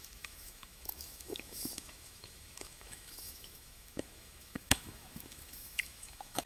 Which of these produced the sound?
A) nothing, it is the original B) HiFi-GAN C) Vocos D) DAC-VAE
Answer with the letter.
D